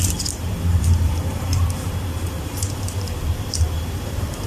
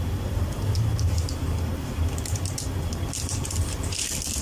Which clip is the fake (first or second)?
first